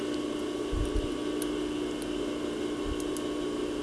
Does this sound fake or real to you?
real